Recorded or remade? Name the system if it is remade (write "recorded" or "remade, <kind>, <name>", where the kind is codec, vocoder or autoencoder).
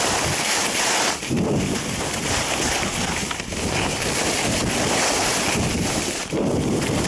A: recorded